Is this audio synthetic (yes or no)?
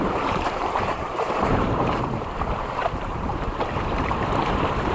yes